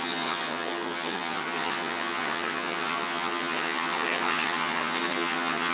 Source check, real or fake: fake